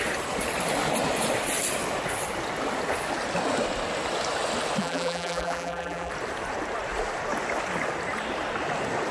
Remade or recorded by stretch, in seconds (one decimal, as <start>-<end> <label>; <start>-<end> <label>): 0.0-4.8 recorded; 4.8-6.1 remade; 6.1-9.1 recorded